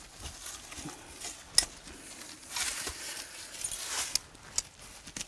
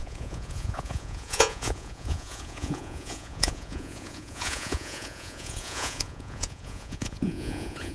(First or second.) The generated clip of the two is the second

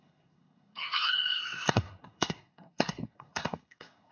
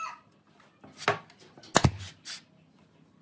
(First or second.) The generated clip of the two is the first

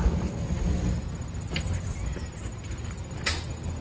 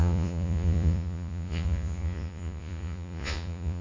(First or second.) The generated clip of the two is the second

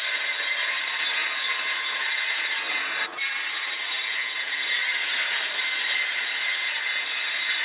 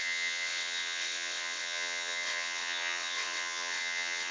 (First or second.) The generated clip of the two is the second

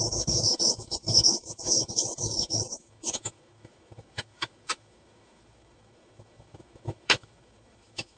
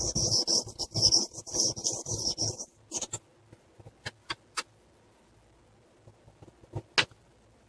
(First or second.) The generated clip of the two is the first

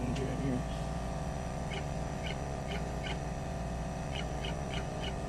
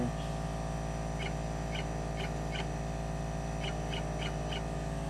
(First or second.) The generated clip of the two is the first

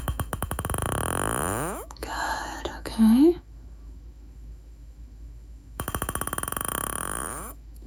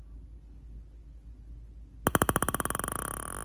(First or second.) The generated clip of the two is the first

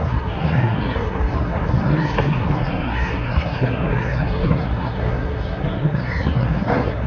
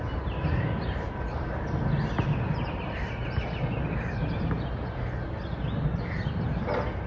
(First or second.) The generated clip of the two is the first